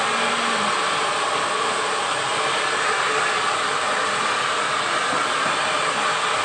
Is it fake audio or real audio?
real